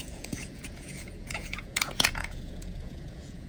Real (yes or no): no